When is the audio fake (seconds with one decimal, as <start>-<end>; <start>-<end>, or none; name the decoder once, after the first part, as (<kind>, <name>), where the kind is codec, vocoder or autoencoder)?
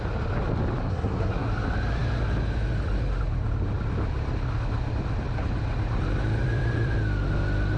0.8-1.5 (codec, SNAC)